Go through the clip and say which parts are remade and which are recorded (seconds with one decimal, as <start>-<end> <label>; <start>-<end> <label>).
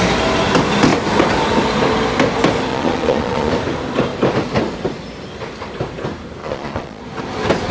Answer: 0.0-2.7 recorded; 2.7-3.5 remade; 3.5-6.4 recorded; 6.4-7.0 remade; 7.0-7.7 recorded